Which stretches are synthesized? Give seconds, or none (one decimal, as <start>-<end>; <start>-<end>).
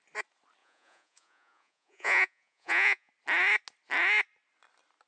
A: 0.6-3.1